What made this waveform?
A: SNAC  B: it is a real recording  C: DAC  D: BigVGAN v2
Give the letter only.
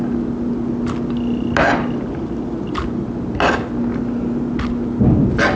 B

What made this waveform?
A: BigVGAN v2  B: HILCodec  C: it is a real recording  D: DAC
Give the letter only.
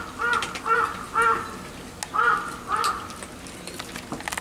C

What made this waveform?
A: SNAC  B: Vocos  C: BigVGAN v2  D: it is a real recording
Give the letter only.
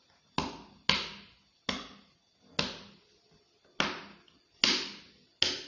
D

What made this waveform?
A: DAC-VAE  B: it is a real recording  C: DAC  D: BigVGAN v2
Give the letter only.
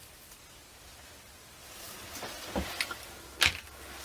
B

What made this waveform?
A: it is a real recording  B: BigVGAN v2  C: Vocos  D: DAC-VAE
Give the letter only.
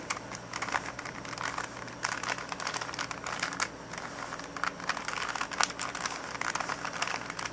A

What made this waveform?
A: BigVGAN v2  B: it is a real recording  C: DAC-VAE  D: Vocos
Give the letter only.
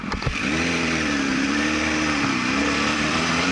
A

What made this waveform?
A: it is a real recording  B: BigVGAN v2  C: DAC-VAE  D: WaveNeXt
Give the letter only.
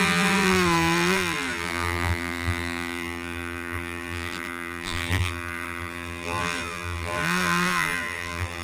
B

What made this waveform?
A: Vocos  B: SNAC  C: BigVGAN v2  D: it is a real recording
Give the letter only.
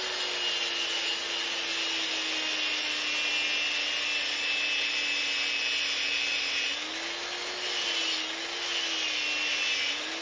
D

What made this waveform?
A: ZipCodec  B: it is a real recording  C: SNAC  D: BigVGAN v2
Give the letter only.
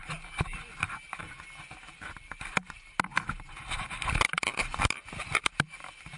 B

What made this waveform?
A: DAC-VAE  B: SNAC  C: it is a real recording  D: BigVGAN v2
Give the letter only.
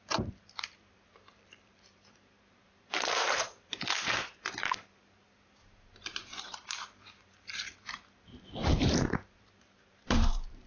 D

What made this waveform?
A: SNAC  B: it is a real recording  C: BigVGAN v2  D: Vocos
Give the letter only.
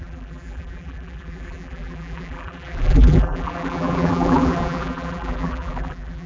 C